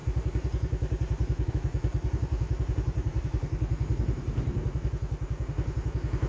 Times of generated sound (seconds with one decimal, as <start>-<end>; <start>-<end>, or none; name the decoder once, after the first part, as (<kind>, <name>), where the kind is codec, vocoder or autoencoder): 0.0-1.5 (vocoder, BigVGAN v2); 1.9-4.9